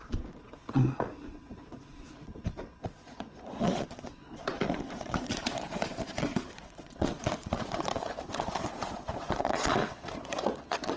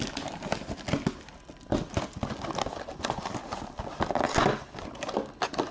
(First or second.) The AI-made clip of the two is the first